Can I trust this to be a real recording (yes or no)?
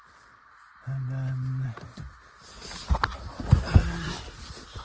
yes